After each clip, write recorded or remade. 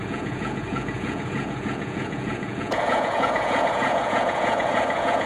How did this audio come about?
remade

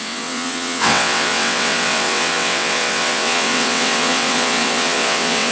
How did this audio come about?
remade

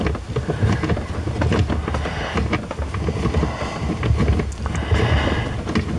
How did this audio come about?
recorded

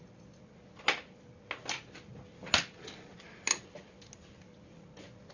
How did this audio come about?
recorded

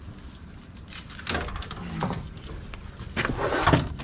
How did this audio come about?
recorded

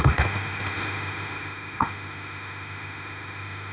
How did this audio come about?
remade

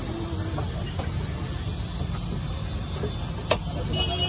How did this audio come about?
recorded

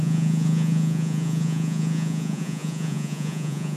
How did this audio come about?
remade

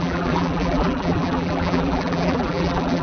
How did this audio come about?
remade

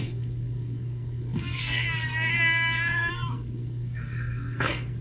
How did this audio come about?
remade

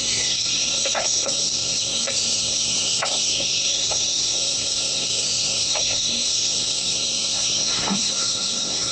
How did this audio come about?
remade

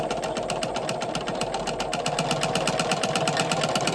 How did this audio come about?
recorded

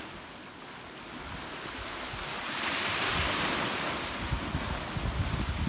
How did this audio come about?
recorded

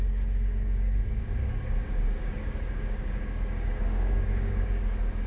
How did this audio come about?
remade